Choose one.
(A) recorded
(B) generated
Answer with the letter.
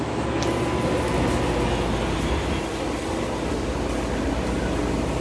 A